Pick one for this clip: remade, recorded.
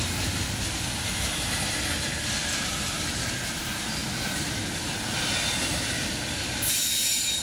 recorded